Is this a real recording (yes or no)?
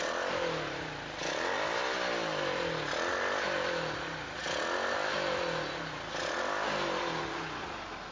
yes